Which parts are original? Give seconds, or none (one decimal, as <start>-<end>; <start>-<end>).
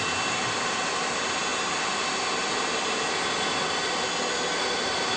0.0-5.2